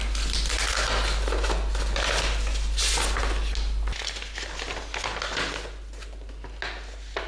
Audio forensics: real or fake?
real